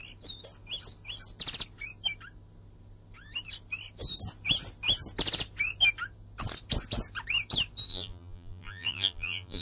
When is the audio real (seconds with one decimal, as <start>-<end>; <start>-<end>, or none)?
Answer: 0.0-7.9